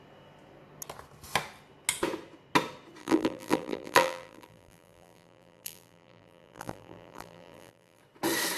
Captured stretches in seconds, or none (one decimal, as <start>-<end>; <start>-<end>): 0.0-3.0; 8.0-8.6